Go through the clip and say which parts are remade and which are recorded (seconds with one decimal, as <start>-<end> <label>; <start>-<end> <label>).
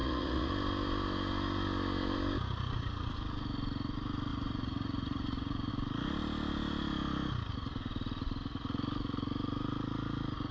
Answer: 0.0-0.5 remade; 0.5-4.3 recorded; 4.3-5.7 remade; 5.7-10.5 recorded